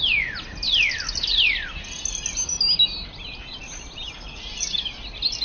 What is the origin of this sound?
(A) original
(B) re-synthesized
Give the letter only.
A